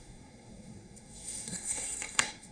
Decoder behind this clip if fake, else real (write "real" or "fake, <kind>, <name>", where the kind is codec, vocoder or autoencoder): fake, codec, SNAC